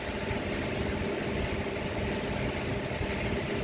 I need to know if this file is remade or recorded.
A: recorded